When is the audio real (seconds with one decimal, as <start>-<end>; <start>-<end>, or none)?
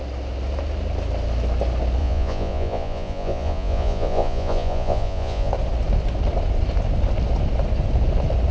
0.0-2.0; 5.5-8.5